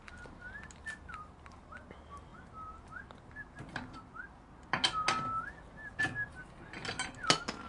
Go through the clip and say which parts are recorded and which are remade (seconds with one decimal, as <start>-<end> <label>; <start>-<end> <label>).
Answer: 0.0-7.7 recorded